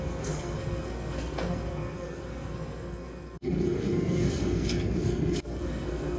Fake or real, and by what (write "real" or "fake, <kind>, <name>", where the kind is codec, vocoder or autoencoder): fake, codec, SNAC